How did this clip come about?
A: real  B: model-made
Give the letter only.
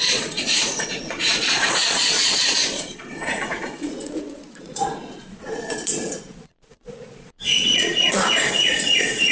B